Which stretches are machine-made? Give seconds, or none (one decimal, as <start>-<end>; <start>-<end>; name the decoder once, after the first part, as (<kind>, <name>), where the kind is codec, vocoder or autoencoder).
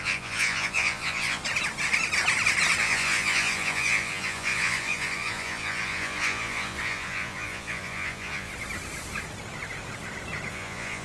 0.0-1.4 (vocoder, Vocos); 2.8-8.5; 10.5-11.0